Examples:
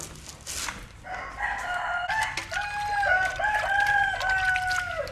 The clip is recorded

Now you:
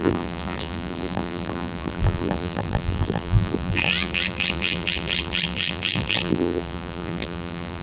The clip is remade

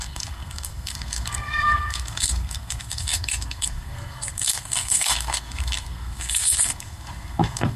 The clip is remade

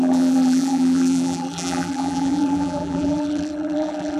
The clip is remade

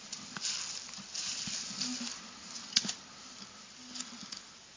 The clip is recorded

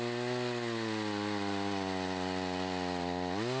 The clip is recorded